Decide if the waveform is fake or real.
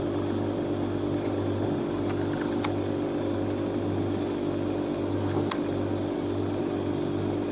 real